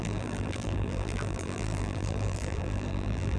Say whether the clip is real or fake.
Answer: fake